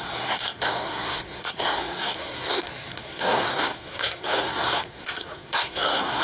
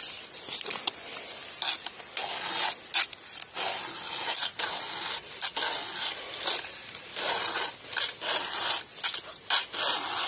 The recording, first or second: second